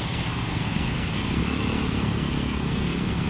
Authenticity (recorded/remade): remade